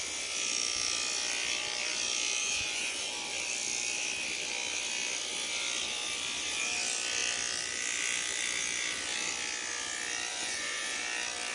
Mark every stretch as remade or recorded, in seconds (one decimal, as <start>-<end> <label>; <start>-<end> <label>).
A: 0.0-2.4 recorded; 2.4-3.1 remade; 3.1-10.3 recorded; 10.3-11.0 remade; 11.0-11.5 recorded

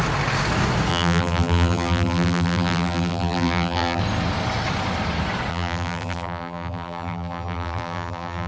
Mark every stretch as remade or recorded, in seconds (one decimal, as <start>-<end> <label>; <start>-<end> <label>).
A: 0.0-0.9 recorded; 0.9-4.0 remade; 4.0-5.5 recorded; 5.5-8.5 remade

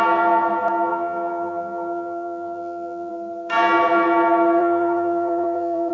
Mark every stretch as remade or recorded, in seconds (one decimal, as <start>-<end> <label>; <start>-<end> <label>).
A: 0.0-0.9 recorded; 0.9-3.1 remade; 3.1-4.6 recorded; 4.6-5.9 remade

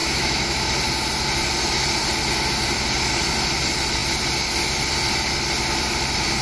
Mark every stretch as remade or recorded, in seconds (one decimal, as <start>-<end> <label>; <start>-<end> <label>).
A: 0.0-0.7 remade; 0.7-6.4 recorded